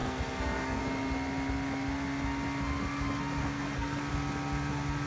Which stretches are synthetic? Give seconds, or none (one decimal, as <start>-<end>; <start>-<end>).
0.0-0.8; 3.4-4.0